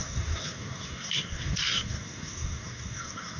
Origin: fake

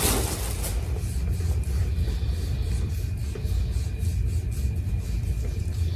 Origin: real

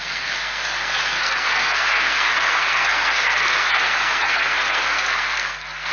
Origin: fake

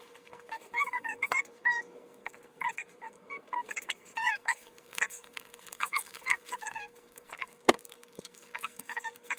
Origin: fake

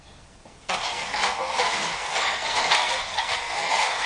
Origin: fake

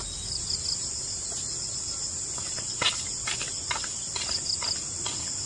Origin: real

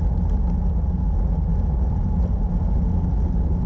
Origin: real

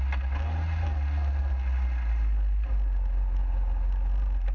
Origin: real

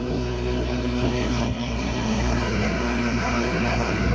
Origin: fake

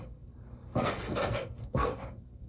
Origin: fake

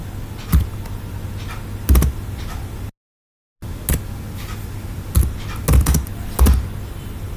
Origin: real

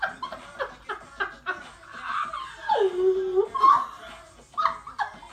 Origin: real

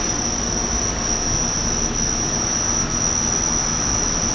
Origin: real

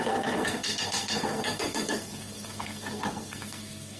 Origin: fake